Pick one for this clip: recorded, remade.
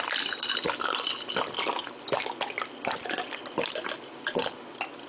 recorded